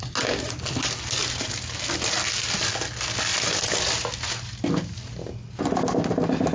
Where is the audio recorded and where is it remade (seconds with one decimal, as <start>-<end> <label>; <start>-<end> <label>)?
0.0-3.3 recorded; 3.3-4.8 remade; 4.8-6.5 recorded